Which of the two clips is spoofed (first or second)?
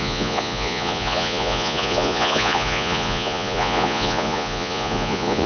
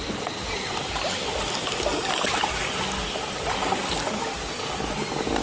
first